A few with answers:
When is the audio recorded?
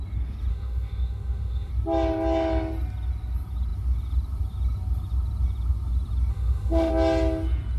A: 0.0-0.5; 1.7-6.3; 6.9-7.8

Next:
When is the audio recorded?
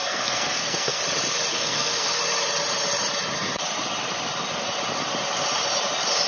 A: 1.0-1.5; 2.2-6.3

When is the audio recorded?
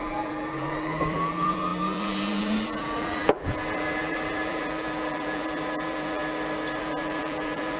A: 6.2-6.8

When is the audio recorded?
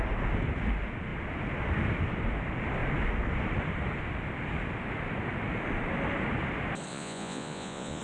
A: 0.0-6.9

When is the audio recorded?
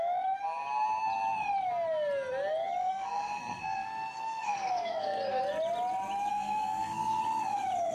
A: 0.0-2.8; 5.4-6.3; 7.2-7.9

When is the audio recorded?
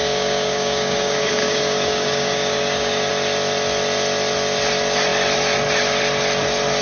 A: 3.1-6.8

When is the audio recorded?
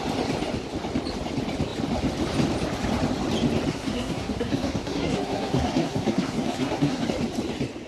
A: 0.0-3.7; 7.0-7.9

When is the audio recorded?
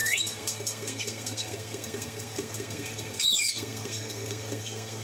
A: none